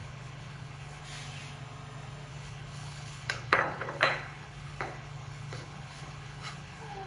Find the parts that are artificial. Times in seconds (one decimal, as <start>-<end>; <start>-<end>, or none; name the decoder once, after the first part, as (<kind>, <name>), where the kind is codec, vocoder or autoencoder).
0.0-1.0 (codec, HILCodec); 2.3-7.1